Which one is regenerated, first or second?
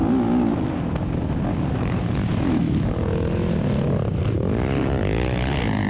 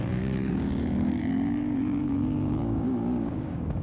second